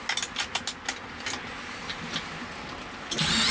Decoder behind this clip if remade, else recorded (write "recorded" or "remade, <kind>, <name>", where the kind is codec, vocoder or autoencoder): recorded